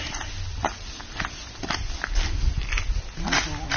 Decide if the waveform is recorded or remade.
recorded